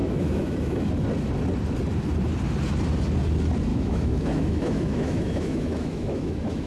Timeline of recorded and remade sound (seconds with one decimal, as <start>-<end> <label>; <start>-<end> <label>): 0.0-0.9 remade; 0.9-3.7 recorded; 3.7-6.7 remade